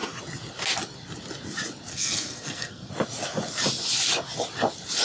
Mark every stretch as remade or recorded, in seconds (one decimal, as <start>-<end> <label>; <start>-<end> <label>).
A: 0.0-1.9 recorded; 1.9-2.9 remade; 2.9-5.0 recorded